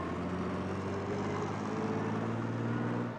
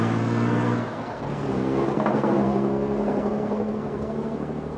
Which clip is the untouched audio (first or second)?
first